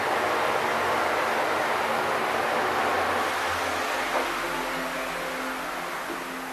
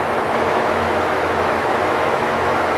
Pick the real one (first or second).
first